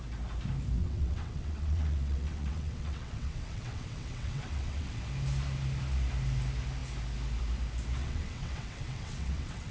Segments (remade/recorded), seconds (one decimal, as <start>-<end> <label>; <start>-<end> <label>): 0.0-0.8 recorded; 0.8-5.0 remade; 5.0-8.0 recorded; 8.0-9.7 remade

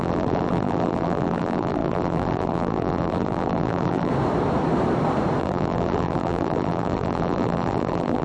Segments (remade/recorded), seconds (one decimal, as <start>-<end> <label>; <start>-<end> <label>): 0.0-4.1 remade; 4.1-5.4 recorded; 5.4-8.2 remade

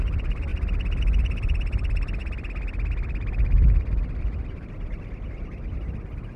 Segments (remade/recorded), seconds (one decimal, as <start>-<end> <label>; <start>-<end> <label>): 0.0-0.5 recorded; 0.5-1.0 remade; 1.0-6.4 recorded

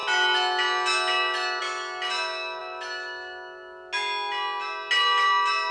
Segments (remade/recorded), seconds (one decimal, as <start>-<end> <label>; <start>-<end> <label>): 0.0-5.7 recorded

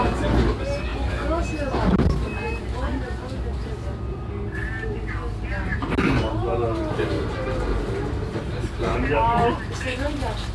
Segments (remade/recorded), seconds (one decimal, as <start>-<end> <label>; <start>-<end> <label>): 0.0-10.5 recorded